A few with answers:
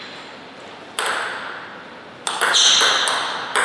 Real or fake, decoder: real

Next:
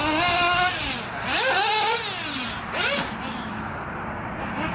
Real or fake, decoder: real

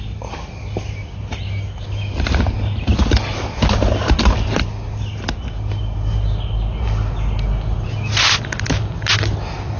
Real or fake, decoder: real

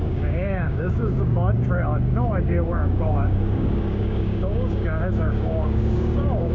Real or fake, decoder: fake, codec, DAC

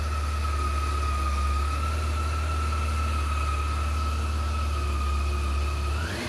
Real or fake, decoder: real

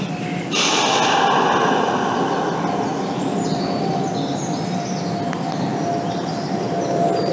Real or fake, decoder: real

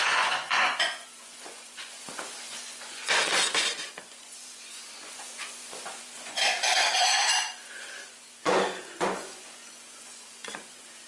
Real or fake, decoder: fake, vocoder, Vocos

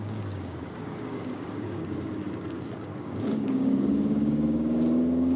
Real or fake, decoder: fake, codec, DAC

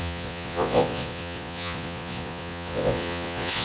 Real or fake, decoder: fake, vocoder, Vocos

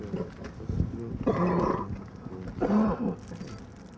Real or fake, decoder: real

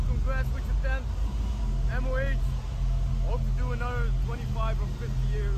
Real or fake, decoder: real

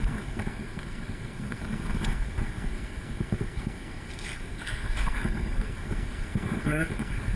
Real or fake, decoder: fake, codec, SNAC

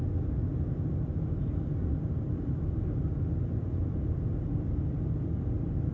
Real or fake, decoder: real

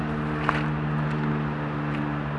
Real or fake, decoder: real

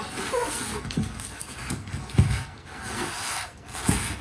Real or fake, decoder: fake, codec, SNAC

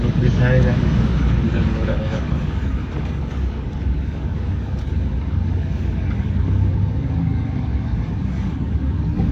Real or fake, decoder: fake, codec, DAC